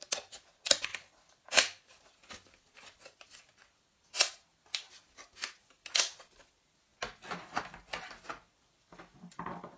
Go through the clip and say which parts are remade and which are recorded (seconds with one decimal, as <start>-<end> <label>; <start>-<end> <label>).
0.0-9.8 recorded